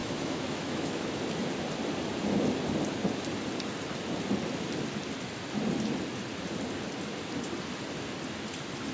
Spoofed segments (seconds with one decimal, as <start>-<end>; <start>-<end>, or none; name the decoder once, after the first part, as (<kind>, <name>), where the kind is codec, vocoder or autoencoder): 0.0-1.2 (autoencoder, DAC-VAE)